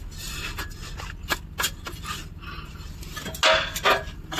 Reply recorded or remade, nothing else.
recorded